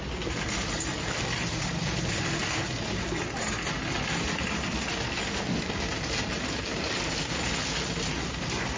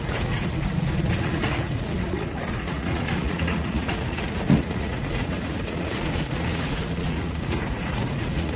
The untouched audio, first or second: first